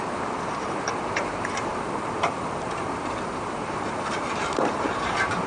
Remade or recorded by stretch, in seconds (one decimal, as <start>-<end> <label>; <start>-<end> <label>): 0.0-5.5 remade